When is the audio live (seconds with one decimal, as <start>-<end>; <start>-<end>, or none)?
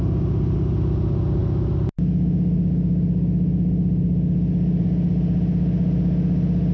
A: 0.0-6.7